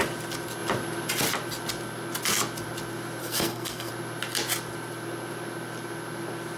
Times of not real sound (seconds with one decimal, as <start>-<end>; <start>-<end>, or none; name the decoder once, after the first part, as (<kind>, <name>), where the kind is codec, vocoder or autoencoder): 3.2-3.9 (codec, SNAC)